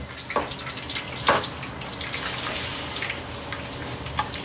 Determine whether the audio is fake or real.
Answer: real